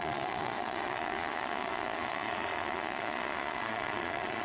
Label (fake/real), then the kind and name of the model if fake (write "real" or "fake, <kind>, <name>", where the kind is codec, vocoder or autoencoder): fake, vocoder, Vocos